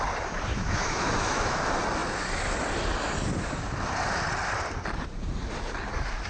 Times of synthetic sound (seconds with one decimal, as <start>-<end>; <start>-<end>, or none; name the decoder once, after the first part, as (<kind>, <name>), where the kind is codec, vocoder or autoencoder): 0.5-1.6 (autoencoder, DAC-VAE)